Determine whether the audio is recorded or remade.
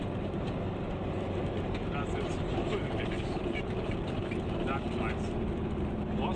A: recorded